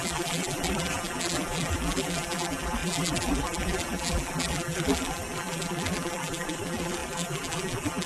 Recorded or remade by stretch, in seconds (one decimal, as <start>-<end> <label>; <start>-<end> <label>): 0.0-8.1 remade